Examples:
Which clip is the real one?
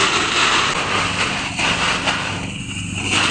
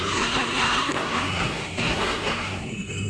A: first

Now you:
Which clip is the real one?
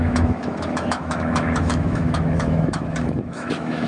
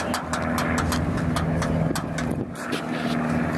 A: second